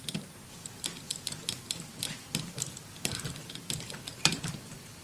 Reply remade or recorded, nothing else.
remade